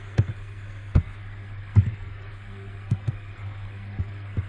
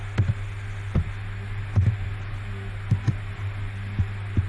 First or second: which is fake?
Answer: first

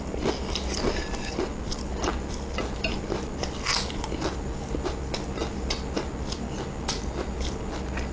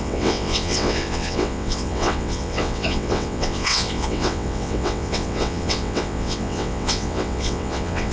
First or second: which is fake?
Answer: second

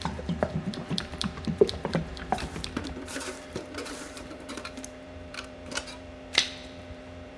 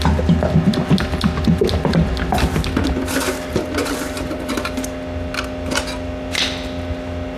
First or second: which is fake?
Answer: first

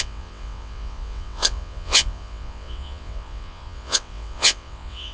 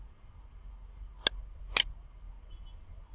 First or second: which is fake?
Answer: first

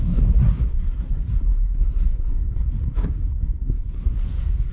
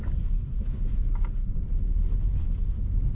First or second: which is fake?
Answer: first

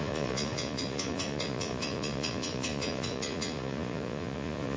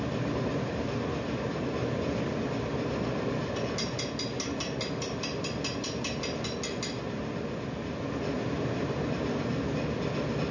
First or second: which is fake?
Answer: first